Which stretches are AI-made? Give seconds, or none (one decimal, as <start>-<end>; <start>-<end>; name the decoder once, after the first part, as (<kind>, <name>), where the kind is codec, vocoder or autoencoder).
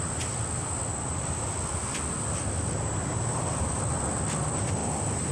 0.6-2.4 (vocoder, BigVGAN v2); 3.3-4.1; 4.8-5.3